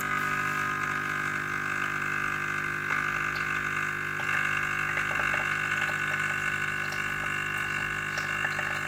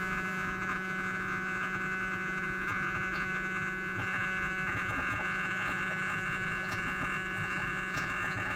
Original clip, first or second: first